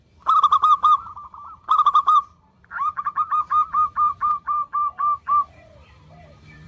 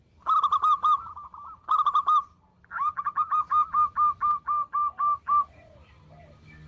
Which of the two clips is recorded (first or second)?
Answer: second